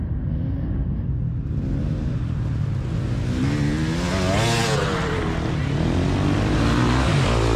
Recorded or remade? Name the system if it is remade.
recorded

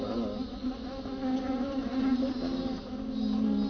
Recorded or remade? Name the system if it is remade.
recorded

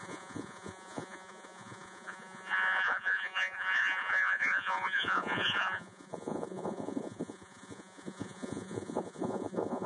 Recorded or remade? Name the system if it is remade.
remade, vocoder, Vocos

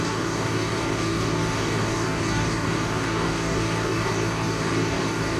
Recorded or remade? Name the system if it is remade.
remade, codec, DAC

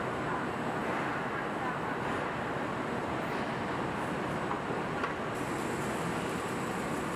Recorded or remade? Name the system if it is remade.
recorded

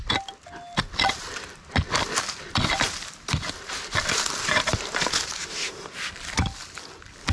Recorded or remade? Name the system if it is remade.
recorded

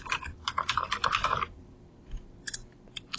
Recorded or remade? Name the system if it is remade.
remade, vocoder, BigVGAN v2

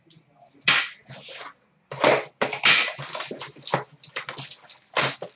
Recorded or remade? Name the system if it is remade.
recorded